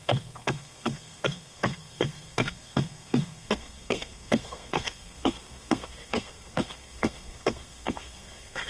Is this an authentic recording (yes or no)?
no